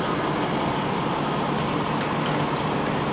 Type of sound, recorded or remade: recorded